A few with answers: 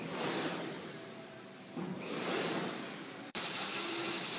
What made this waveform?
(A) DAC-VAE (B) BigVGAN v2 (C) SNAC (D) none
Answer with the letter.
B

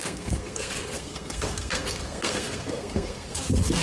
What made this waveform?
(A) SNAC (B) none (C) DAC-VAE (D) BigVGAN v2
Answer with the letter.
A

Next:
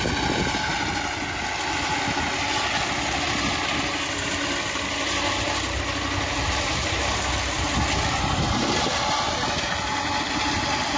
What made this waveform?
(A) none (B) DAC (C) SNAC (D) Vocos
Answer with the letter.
A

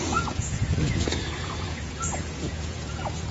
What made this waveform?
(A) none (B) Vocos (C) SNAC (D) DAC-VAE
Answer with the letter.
B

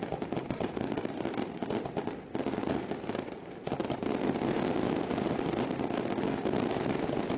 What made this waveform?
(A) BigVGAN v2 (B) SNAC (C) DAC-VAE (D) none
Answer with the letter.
D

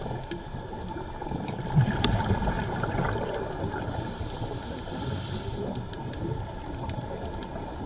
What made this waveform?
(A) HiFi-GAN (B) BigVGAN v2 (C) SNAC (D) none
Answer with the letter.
B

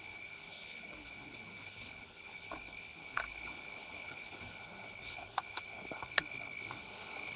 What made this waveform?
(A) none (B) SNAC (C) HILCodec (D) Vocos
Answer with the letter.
C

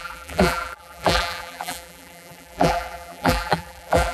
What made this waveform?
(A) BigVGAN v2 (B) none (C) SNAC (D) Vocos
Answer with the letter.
A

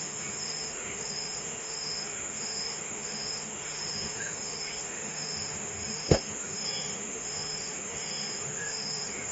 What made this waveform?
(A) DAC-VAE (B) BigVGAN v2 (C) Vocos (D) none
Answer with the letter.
A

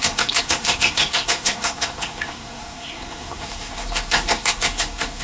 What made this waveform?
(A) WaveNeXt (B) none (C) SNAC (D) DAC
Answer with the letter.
C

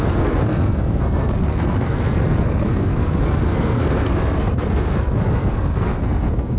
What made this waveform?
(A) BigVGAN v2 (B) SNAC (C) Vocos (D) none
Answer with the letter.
B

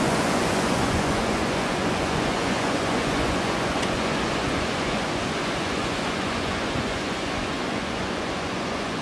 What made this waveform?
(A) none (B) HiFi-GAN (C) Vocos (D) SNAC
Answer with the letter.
C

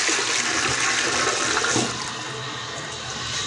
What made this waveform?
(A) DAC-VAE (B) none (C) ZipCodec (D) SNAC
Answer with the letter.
B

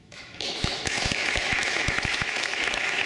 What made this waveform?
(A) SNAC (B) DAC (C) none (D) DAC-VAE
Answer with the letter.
D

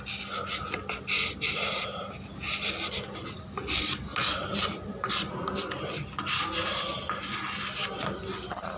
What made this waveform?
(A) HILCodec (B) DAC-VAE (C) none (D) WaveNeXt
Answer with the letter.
C